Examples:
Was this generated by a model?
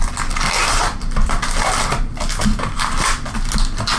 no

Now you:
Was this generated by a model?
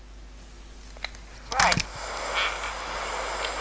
no